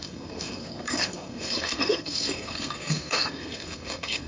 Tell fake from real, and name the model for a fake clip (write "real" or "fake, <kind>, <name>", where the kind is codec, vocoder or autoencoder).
fake, codec, SNAC